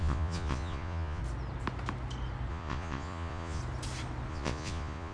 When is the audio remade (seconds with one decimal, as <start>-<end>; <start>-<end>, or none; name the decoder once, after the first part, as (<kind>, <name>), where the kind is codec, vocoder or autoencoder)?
0.0-1.2 (vocoder, Vocos); 2.5-3.6; 4.3-5.1